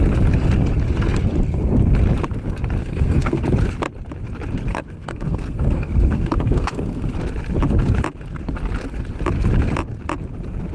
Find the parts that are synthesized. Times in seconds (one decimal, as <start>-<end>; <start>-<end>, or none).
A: 2.8-3.4; 4.7-7.1